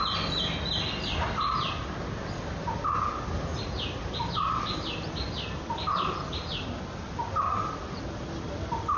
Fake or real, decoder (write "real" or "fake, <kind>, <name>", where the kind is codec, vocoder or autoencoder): real